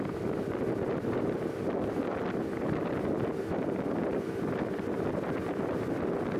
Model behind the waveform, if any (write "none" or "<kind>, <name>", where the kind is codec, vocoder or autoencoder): none